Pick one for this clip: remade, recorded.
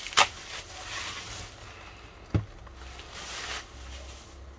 recorded